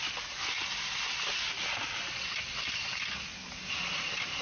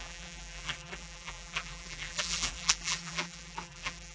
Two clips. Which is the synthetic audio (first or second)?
second